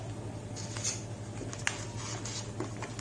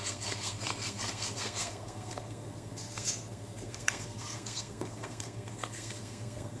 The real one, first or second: first